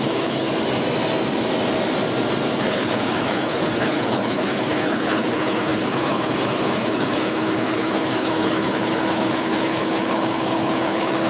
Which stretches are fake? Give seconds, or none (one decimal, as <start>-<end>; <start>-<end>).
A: 0.0-0.5; 2.6-11.3